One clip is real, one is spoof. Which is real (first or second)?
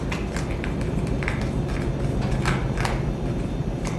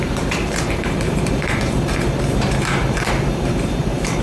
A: first